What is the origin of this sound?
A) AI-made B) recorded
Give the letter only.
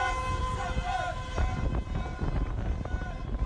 B